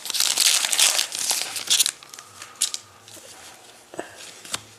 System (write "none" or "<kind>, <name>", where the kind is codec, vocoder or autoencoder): none